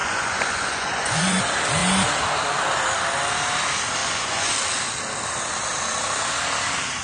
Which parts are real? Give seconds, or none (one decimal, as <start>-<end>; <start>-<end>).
1.4-4.0; 4.5-7.0